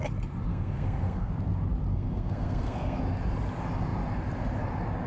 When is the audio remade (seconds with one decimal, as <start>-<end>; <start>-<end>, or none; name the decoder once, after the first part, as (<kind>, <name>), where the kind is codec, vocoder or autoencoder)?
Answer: 0.5-1.3 (codec, SNAC); 1.9-3.0